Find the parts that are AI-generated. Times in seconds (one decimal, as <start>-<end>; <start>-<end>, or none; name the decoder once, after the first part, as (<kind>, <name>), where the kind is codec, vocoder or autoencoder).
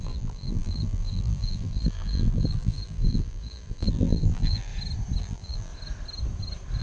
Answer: 0.0-4.7 (vocoder, BigVGAN v2); 5.2-5.7